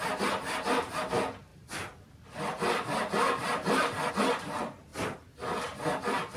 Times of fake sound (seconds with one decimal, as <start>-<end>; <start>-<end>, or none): none